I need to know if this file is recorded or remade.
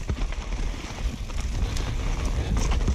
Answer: recorded